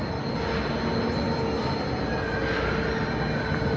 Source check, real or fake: real